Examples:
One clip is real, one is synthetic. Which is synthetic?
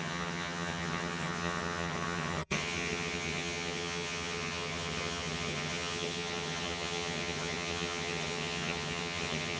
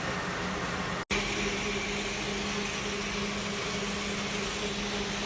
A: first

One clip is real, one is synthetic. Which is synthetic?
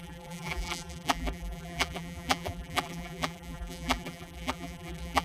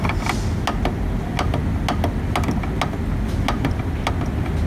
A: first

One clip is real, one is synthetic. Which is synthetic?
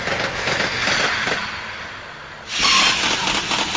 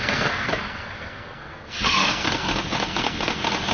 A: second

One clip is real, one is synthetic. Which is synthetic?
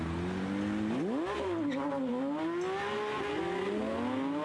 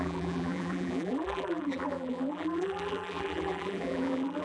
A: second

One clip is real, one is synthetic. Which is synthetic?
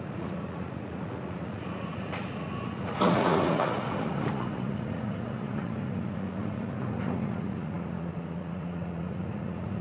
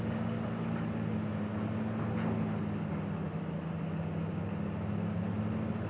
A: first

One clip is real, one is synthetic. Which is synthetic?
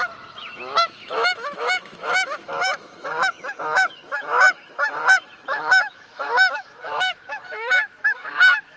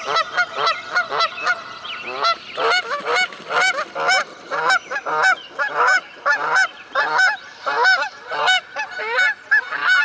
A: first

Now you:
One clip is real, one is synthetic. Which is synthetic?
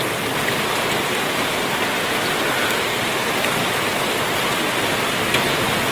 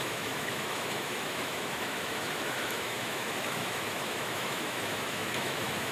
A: second